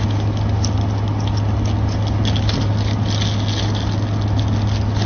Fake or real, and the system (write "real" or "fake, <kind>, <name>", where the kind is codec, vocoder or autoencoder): real